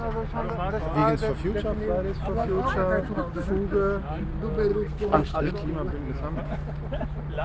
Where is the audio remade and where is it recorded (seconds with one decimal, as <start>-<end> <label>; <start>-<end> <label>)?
0.0-4.7 recorded; 4.7-5.5 remade; 5.5-7.4 recorded